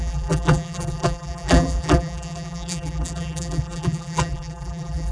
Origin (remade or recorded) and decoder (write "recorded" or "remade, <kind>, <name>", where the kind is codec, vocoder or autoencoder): remade, vocoder, BigVGAN v2